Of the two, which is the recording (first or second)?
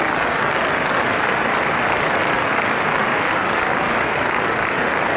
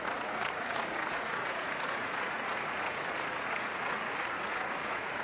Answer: first